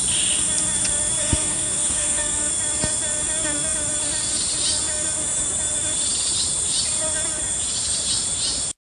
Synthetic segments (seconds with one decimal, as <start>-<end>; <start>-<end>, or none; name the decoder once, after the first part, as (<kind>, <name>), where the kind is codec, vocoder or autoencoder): 1.2-2.5 (codec, SNAC)